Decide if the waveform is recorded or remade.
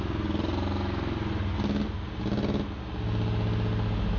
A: recorded